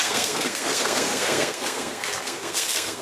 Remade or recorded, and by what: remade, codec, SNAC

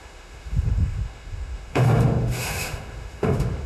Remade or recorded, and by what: remade, autoencoder, DAC-VAE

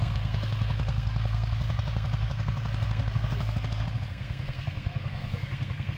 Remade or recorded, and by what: remade, codec, SNAC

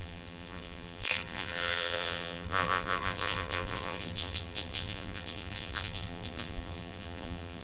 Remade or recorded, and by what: remade, vocoder, BigVGAN v2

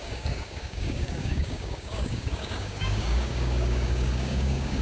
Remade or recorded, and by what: remade, codec, DAC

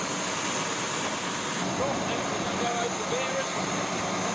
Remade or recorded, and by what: recorded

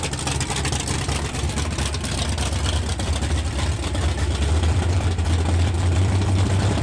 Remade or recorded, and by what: remade, vocoder, BigVGAN v2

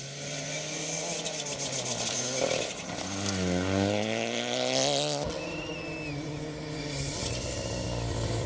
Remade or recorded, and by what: recorded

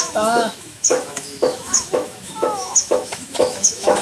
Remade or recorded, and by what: remade, autoencoder, DAC-VAE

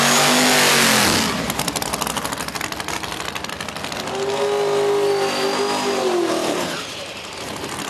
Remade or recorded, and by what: recorded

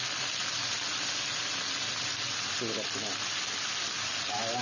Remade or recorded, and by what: recorded